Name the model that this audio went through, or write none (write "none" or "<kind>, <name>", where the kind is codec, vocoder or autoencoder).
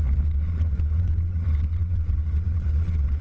vocoder, Vocos